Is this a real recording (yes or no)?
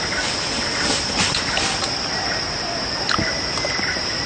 yes